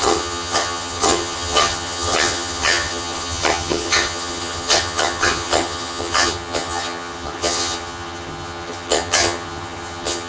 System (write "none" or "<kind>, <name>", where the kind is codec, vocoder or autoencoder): vocoder, HiFi-GAN